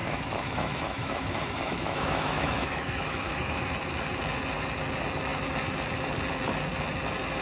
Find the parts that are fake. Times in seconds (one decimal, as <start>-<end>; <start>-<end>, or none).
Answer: 0.0-3.6